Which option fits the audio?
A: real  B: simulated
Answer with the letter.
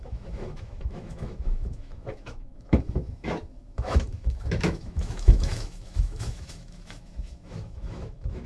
B